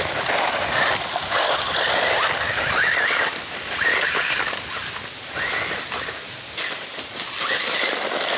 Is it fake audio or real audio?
real